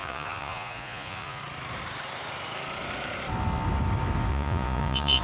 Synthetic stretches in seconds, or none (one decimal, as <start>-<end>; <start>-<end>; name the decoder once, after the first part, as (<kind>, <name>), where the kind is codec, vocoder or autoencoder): 0.0-1.4 (vocoder, Vocos); 4.3-5.2